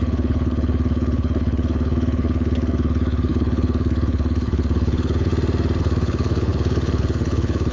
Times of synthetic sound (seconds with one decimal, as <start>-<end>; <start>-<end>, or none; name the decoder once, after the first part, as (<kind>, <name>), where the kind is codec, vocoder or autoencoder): 0.0-5.3 (codec, HILCodec); 5.8-7.7